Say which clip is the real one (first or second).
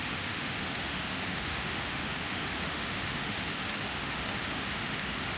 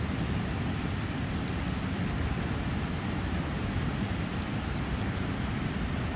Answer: second